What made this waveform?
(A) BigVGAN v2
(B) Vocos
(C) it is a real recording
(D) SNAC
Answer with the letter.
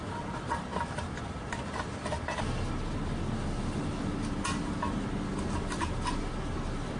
C